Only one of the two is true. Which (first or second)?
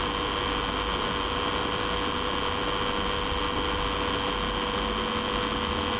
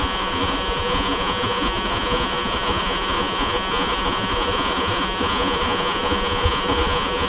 first